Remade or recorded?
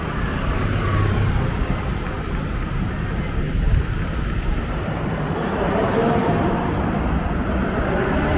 remade